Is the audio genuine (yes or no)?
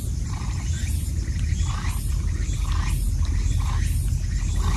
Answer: yes